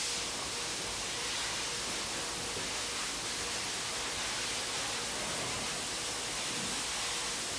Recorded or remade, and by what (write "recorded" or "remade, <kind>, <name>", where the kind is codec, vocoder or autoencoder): recorded